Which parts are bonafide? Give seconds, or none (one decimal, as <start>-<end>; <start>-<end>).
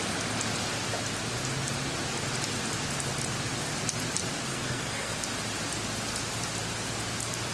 0.0-4.5; 5.2-7.5